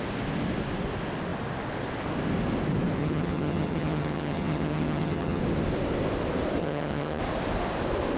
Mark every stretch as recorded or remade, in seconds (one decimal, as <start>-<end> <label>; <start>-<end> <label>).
0.0-3.0 recorded; 3.0-5.4 remade; 5.4-6.6 recorded; 6.6-7.2 remade; 7.2-8.2 recorded